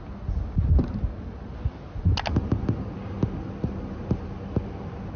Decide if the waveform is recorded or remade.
recorded